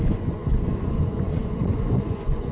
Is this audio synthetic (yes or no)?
yes